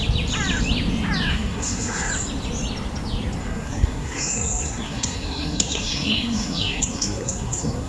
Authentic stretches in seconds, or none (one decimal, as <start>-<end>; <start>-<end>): 0.0-1.3; 2.1-3.4